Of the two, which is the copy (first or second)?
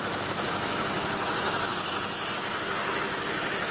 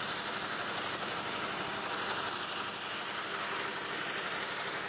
first